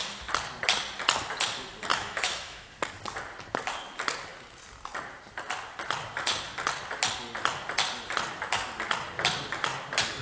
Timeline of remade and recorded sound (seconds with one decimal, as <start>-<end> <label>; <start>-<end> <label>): 0.0-1.9 recorded; 1.9-2.7 remade; 2.7-10.2 recorded